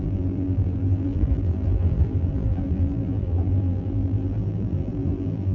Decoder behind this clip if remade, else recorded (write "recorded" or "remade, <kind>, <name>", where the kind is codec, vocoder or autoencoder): remade, vocoder, BigVGAN v2